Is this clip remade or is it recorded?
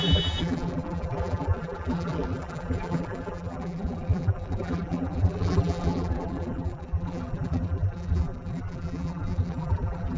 remade